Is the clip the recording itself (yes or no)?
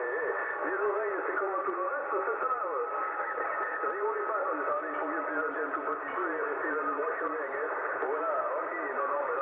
yes